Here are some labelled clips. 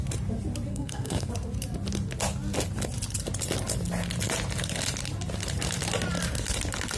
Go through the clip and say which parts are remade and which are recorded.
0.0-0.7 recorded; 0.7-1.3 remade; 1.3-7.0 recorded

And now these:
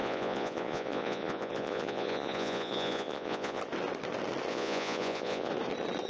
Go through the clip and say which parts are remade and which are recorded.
0.0-3.6 remade; 3.6-4.5 recorded; 4.5-5.5 remade; 5.5-6.1 recorded

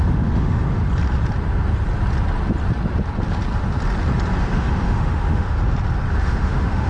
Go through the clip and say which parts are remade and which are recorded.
0.0-0.8 remade; 0.8-4.4 recorded; 4.4-5.6 remade; 5.6-6.2 recorded; 6.2-6.9 remade

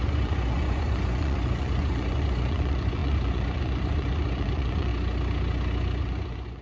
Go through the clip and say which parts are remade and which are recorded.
0.0-4.9 remade; 4.9-6.0 recorded; 6.0-6.6 remade

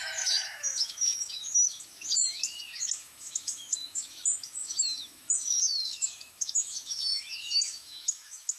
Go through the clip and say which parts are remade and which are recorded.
0.0-8.6 remade

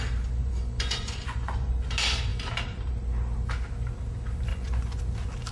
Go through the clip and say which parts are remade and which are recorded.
0.0-0.4 recorded; 0.4-1.9 remade; 1.9-4.5 recorded; 4.5-5.0 remade; 5.0-5.5 recorded